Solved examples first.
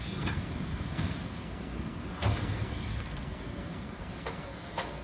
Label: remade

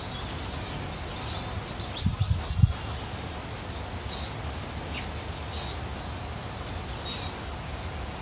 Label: recorded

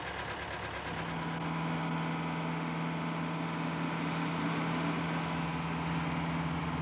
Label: recorded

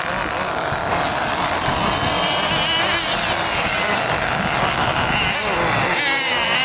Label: recorded